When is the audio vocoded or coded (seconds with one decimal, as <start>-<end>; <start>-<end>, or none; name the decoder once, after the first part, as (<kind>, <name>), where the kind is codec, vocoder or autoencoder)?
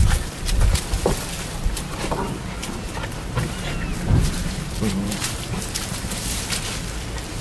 0.0-0.6 (vocoder, BigVGAN v2); 2.6-3.5; 3.9-6.2